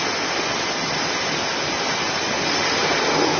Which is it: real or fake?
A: real